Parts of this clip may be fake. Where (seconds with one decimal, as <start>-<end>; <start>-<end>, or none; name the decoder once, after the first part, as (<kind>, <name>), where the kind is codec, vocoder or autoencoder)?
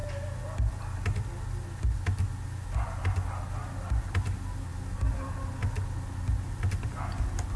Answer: none